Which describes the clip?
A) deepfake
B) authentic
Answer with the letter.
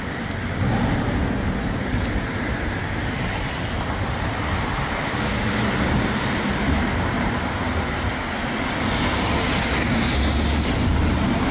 B